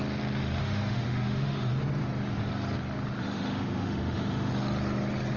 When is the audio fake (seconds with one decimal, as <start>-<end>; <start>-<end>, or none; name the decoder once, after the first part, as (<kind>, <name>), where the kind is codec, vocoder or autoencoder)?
0.6-1.7 (autoencoder, DAC-VAE); 3.2-4.5